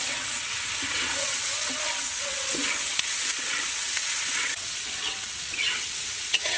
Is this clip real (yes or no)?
no